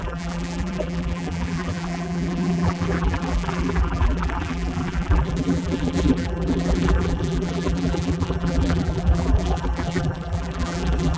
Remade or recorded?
remade